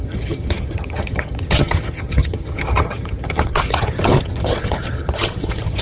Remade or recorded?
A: remade